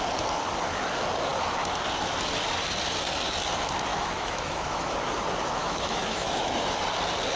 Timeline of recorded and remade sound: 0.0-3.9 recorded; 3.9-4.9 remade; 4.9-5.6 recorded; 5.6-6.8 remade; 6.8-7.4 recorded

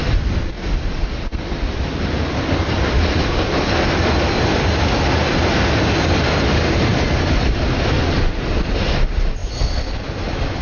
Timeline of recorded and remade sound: 0.0-10.6 recorded

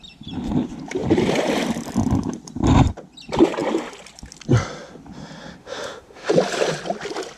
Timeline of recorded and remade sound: 0.0-5.6 recorded; 5.6-6.3 remade; 6.3-7.4 recorded

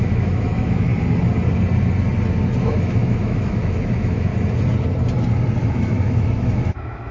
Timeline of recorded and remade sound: 0.0-0.9 remade; 0.9-2.6 recorded; 2.6-4.3 remade; 4.3-5.7 recorded; 5.7-7.1 remade